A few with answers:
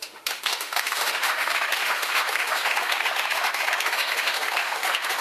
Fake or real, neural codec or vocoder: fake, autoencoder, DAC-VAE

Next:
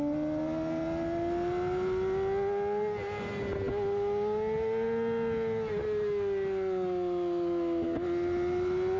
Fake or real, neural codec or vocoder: real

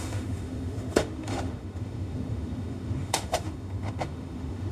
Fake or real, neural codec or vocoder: fake, autoencoder, DAC-VAE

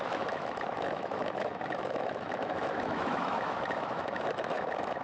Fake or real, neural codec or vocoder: fake, autoencoder, DAC-VAE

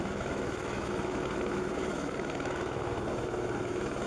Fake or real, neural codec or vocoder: fake, autoencoder, DAC-VAE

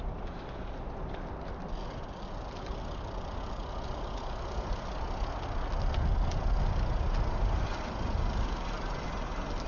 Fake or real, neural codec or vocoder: real